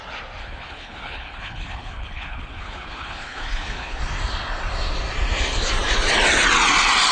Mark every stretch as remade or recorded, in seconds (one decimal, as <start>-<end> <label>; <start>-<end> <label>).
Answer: 0.0-0.4 recorded; 0.4-4.0 remade; 4.0-7.1 recorded